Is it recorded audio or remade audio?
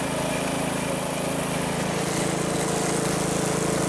recorded